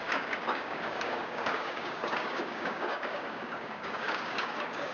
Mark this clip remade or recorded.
remade